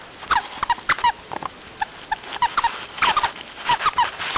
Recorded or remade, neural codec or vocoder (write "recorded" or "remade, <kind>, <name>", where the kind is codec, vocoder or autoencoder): recorded